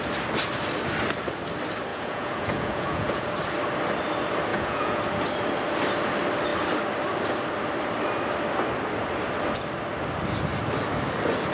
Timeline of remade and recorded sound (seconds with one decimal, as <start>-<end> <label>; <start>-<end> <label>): 0.0-1.9 recorded; 1.9-3.3 remade; 3.3-4.5 recorded; 4.5-5.0 remade; 5.0-11.5 recorded